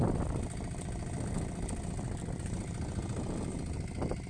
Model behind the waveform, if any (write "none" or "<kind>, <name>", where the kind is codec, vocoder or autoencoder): none